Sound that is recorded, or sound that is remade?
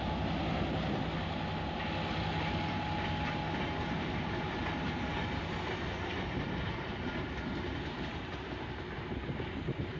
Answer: recorded